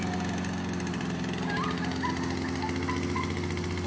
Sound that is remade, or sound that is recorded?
recorded